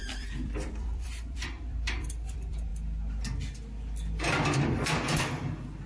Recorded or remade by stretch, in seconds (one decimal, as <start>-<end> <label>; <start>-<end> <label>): 0.0-2.7 remade; 2.7-5.9 recorded

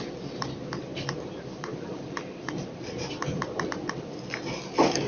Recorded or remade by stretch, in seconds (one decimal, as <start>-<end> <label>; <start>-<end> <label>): 0.0-0.9 recorded; 0.9-3.8 remade; 3.8-5.1 recorded

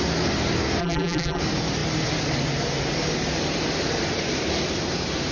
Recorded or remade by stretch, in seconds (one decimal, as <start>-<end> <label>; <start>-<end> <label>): 0.0-0.8 recorded; 0.8-1.4 remade; 1.4-5.3 recorded

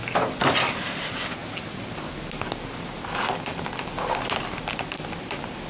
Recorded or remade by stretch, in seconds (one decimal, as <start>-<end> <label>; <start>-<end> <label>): 0.0-1.4 remade; 1.4-4.4 recorded; 4.4-5.7 remade